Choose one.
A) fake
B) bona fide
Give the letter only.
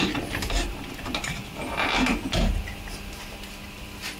B